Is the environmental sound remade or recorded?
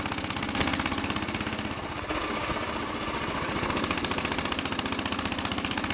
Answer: recorded